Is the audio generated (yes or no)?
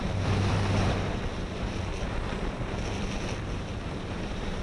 yes